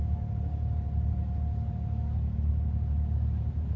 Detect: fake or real real